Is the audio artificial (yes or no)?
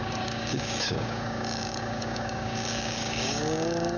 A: yes